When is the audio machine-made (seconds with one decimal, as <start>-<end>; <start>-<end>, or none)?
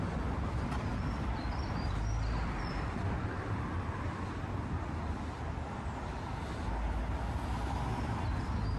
0.9-5.1